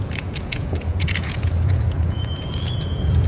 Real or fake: fake